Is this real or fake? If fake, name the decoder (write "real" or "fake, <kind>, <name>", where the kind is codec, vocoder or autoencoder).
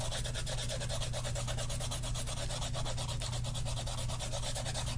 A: real